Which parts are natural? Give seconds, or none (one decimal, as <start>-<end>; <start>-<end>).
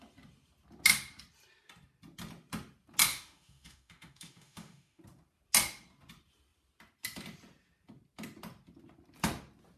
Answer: 0.0-3.1; 5.0-9.8